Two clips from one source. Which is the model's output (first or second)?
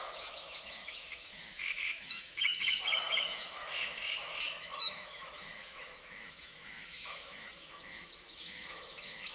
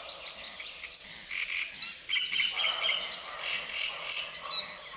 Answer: first